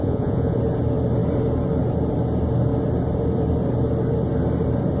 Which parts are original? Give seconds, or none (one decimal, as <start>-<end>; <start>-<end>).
0.6-5.0